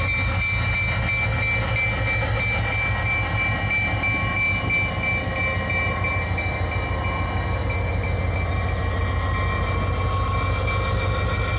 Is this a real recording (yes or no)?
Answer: yes